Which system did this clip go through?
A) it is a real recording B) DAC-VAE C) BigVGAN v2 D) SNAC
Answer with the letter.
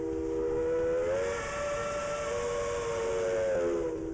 A